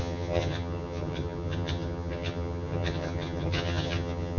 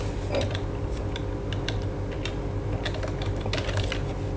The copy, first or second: first